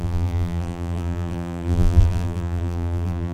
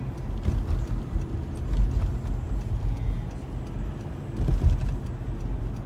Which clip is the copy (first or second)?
first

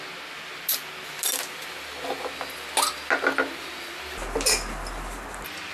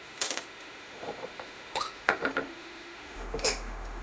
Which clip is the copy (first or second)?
second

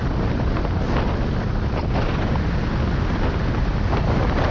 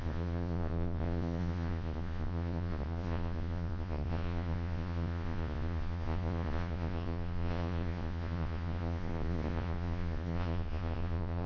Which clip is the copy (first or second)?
second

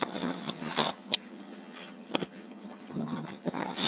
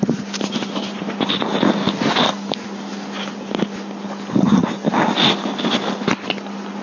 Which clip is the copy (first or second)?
first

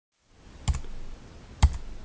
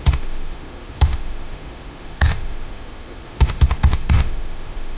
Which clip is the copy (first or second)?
second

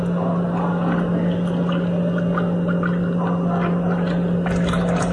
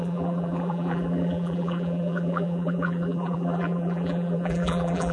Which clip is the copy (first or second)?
second